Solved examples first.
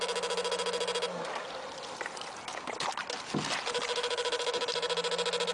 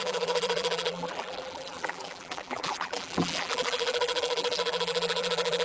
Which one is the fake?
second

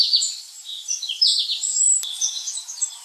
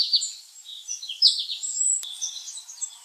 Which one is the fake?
first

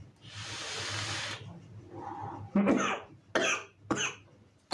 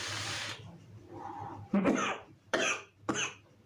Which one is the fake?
second